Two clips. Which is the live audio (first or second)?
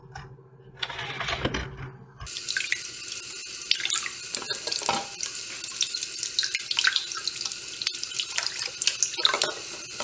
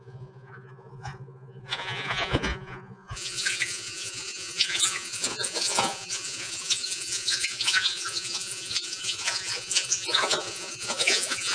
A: first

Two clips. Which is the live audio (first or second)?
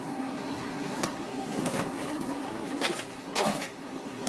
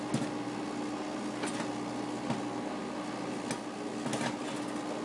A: second